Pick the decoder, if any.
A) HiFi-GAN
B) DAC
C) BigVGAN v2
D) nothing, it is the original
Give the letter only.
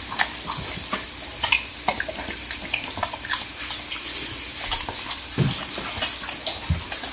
D